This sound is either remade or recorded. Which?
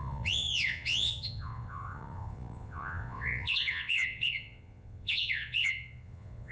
remade